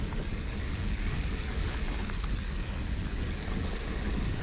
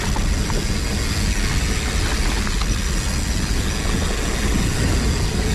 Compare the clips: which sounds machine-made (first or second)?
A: first